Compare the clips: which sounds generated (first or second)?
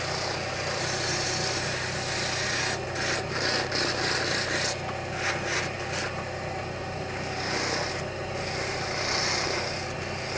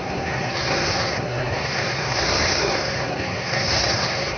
second